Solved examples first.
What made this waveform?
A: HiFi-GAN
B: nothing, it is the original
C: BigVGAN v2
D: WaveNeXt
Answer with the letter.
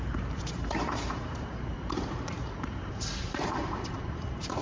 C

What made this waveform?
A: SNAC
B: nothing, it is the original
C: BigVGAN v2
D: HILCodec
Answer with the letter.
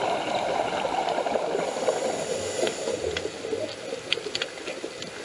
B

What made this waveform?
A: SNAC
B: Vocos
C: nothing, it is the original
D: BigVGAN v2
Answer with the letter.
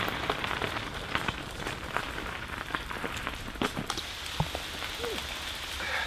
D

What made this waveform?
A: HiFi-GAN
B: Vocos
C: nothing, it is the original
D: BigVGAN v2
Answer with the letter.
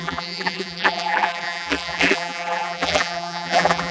D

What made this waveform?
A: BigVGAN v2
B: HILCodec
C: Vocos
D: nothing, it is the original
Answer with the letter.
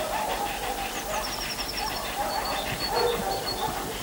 A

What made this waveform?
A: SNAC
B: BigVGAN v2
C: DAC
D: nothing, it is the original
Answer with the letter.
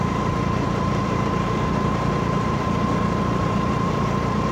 B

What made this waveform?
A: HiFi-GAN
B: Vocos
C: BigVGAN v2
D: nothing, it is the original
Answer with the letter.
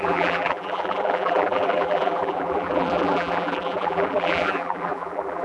C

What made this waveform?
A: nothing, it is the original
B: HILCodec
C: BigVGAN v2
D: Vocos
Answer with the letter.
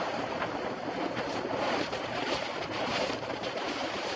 C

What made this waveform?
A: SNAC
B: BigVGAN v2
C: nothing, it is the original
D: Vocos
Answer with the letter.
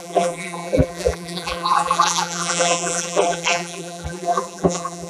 B